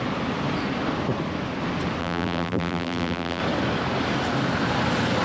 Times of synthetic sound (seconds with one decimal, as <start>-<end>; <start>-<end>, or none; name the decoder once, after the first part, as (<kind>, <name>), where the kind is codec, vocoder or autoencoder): 2.0-3.4 (vocoder, BigVGAN v2)